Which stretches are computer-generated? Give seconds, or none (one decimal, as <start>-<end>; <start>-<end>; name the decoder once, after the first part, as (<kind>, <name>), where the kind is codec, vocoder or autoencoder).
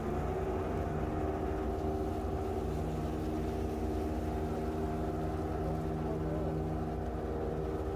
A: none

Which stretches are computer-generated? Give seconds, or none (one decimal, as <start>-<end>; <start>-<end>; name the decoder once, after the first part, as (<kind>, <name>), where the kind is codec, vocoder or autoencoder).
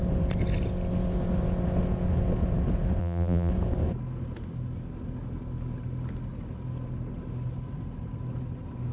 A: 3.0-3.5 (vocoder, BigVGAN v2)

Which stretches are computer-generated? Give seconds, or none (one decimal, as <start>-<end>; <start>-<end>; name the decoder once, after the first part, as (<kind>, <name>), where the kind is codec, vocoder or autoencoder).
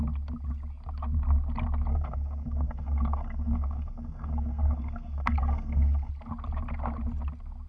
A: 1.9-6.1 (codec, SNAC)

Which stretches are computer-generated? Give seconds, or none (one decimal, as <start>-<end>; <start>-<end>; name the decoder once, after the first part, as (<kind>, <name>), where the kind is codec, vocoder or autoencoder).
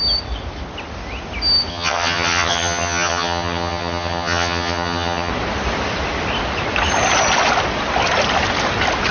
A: 1.7-5.3 (vocoder, HiFi-GAN)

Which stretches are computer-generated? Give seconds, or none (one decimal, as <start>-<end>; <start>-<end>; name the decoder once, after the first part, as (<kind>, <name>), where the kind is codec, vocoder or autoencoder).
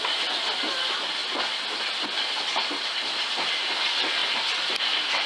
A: none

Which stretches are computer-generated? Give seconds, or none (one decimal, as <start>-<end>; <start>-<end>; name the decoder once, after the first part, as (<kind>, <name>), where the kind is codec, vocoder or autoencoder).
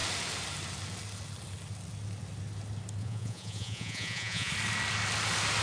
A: 3.0-4.5 (vocoder, Vocos)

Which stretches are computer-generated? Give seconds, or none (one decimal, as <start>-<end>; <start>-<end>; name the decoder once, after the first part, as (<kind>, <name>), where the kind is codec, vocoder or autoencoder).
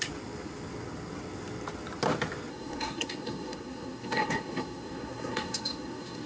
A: 2.5-6.3 (codec, SNAC)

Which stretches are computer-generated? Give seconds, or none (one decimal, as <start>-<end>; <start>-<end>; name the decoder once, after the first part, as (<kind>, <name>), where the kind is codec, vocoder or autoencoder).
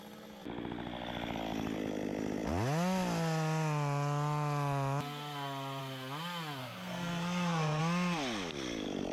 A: 6.6-7.8 (codec, SNAC)